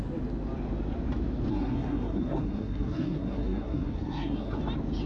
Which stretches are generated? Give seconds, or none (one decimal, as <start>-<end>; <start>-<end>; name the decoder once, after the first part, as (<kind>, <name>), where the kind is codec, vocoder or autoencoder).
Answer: 1.5-4.6 (codec, SNAC)